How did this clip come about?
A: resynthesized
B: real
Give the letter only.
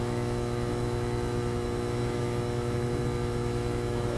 A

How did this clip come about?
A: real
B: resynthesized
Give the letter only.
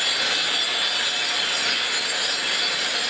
A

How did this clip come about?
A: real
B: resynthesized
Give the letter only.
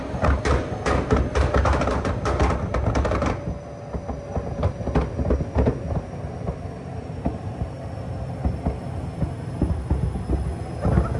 A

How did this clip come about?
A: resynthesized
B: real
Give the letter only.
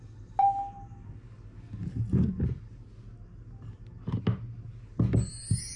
B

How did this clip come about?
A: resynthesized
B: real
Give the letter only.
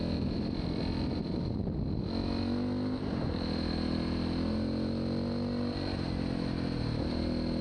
B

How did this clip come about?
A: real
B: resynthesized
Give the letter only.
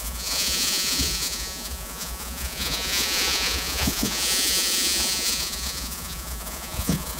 B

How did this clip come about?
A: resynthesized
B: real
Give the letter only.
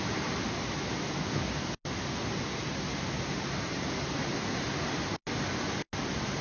B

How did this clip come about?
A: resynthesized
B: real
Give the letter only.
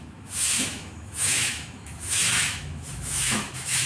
A